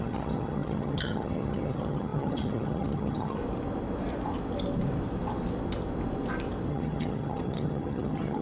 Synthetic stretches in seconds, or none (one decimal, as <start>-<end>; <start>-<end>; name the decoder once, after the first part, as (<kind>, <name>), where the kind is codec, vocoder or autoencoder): 0.0-3.4 (vocoder, HiFi-GAN); 6.7-8.4